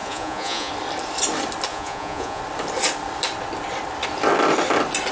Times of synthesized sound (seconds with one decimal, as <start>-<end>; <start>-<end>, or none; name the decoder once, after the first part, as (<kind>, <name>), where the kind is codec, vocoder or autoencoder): 0.0-0.7 (vocoder, Vocos); 1.7-2.4